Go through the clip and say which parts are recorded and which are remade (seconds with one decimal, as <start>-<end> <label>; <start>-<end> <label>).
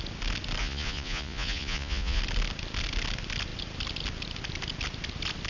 0.0-0.6 recorded; 0.6-2.2 remade; 2.2-5.5 recorded